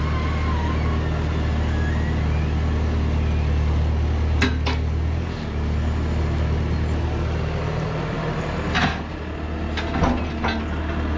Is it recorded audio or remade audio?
recorded